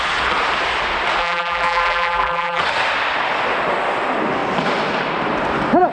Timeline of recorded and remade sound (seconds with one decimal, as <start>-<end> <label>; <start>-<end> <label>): 0.0-1.2 recorded; 1.2-2.6 remade; 2.6-5.9 recorded